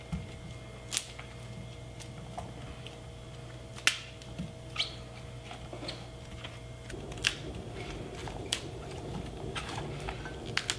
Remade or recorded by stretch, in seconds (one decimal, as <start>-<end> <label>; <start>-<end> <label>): 0.0-8.2 recorded; 8.2-9.7 remade; 9.7-10.8 recorded